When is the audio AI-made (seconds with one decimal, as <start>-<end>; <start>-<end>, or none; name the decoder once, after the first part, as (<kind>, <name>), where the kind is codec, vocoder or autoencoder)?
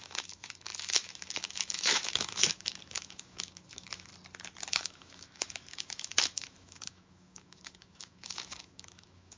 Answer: 0.0-4.1 (autoencoder, DAC-VAE); 4.7-9.4